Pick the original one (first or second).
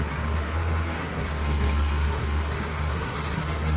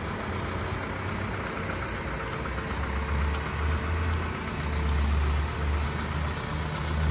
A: second